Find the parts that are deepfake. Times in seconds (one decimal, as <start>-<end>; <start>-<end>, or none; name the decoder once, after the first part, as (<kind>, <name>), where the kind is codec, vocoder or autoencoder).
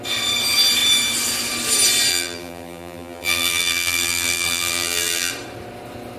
2.1-5.3 (vocoder, BigVGAN v2)